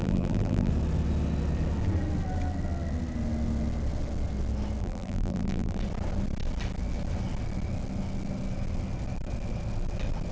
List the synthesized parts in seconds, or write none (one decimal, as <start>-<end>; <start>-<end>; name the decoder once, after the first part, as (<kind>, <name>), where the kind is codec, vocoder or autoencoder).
0.0-0.7 (vocoder, BigVGAN v2); 4.8-5.8

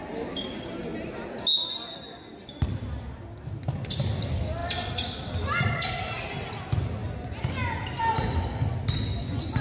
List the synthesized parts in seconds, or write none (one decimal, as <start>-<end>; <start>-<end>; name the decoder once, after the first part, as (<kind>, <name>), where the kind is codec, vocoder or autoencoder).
none

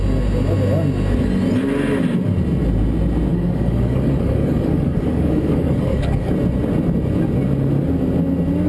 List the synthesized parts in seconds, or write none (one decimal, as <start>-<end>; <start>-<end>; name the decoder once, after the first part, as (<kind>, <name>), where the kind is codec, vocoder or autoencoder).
3.3-6.3 (codec, DAC)

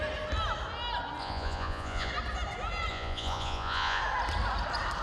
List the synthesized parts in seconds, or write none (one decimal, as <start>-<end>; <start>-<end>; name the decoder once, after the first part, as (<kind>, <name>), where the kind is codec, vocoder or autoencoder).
1.2-2.1 (vocoder, Vocos); 2.9-4.0

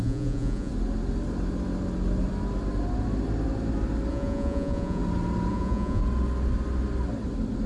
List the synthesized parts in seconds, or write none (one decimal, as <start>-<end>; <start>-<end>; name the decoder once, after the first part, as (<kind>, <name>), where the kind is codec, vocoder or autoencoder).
0.0-0.7 (vocoder, Vocos); 4.1-5.0; 5.5-6.0